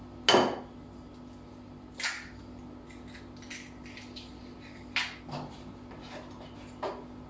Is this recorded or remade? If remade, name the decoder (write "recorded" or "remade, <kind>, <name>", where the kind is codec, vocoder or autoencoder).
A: recorded